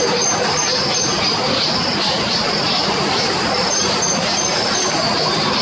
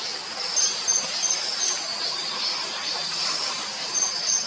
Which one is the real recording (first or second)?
second